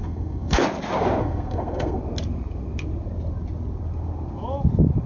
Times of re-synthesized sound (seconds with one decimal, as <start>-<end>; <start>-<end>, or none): 0.0-0.6; 1.2-2.0